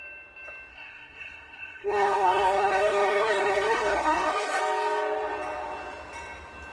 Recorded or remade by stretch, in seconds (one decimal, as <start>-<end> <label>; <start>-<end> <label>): 0.0-0.7 recorded; 0.7-4.6 remade; 4.6-6.7 recorded